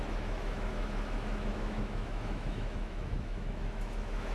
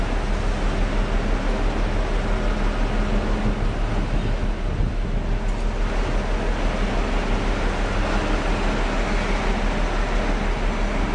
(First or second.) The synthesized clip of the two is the first